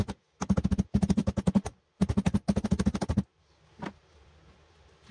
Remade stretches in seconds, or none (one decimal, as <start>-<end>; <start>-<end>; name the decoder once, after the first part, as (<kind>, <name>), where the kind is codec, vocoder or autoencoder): none

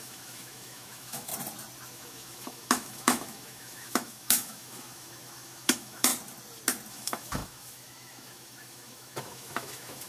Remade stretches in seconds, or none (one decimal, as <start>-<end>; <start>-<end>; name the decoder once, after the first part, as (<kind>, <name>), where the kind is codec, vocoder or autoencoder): 0.0-1.3 (autoencoder, DAC-VAE); 1.9-6.1; 6.9-10.1

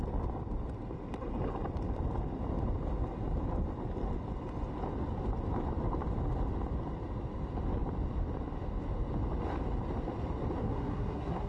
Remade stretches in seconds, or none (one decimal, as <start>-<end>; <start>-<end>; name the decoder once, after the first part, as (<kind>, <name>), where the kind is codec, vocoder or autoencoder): 10.6-11.5 (codec, SNAC)